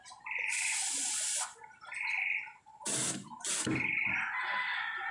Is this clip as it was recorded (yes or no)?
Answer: yes